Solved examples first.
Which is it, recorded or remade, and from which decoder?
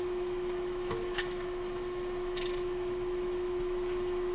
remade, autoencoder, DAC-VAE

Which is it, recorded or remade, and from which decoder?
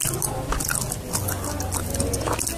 recorded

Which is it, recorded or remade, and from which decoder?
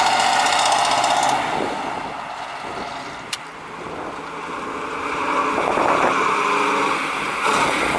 recorded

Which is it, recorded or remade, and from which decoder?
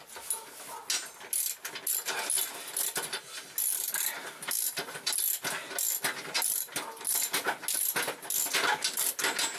recorded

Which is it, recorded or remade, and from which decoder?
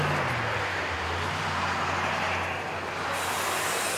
recorded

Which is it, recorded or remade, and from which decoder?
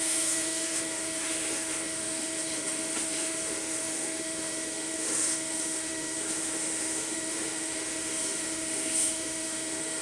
remade, autoencoder, DAC-VAE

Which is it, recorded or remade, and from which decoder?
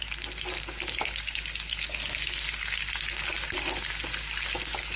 recorded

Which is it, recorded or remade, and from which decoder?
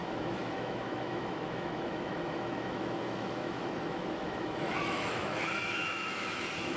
remade, autoencoder, DAC-VAE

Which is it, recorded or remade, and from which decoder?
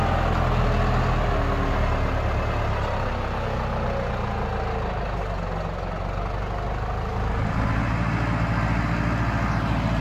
recorded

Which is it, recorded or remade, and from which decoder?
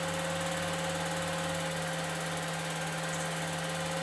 recorded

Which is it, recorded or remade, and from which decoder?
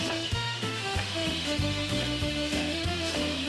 remade, autoencoder, DAC-VAE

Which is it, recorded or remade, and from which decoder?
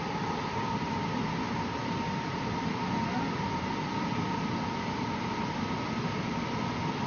recorded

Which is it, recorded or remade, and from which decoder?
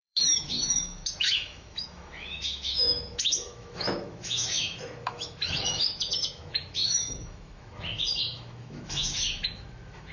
remade, autoencoder, DAC-VAE